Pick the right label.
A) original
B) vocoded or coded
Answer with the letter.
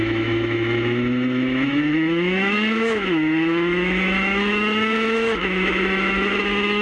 B